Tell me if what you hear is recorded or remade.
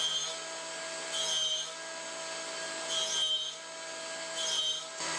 recorded